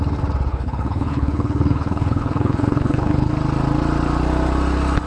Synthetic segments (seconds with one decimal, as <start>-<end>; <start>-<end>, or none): 0.5-3.3